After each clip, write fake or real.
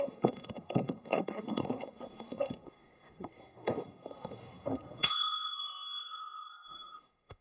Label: fake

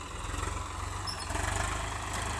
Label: real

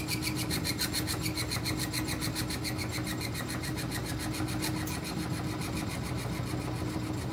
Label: real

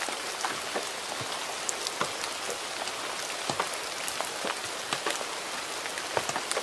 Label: real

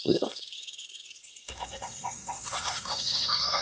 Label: fake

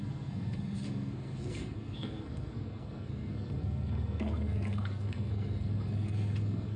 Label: fake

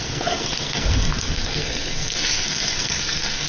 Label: fake